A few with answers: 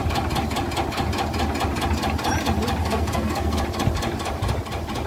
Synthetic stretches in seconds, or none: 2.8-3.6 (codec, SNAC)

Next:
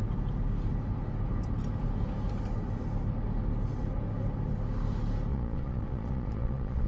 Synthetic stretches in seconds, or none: 5.3-6.9 (vocoder, Vocos)